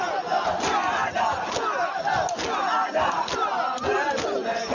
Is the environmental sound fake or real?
real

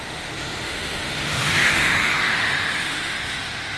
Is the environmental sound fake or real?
fake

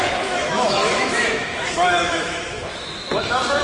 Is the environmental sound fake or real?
fake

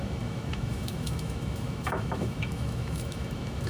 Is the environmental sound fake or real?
fake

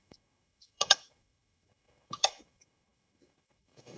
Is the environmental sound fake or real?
fake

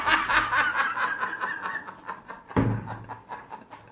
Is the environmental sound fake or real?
real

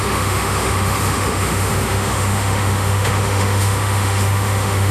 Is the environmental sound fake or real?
fake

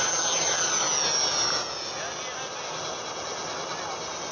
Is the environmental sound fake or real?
real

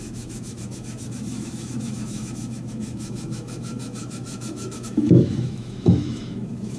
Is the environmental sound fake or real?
fake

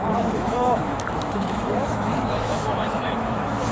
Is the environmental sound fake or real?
fake